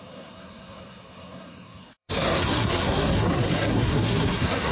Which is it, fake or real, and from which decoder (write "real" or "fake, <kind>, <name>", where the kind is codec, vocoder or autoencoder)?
fake, codec, SNAC